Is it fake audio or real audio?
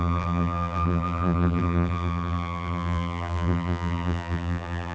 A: fake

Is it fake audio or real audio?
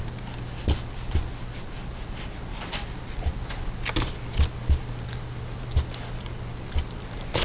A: real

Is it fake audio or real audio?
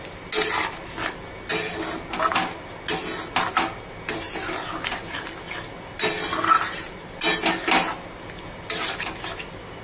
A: real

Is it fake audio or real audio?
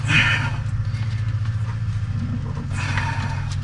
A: real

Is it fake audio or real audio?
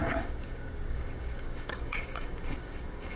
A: fake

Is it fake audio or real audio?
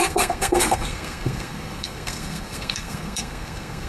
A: fake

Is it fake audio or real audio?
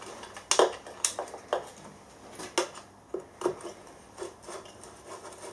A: real